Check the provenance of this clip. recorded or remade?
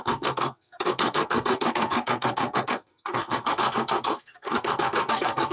remade